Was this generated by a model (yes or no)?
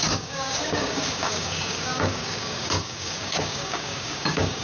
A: yes